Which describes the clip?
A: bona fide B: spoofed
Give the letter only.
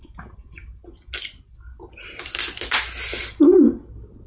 A